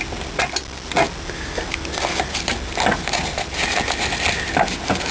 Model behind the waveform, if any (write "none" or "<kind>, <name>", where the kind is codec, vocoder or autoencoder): none